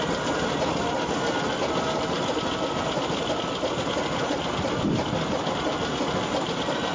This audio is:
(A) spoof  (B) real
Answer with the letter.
B